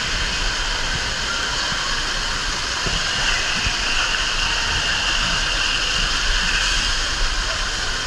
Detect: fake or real real